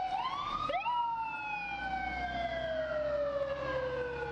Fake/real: real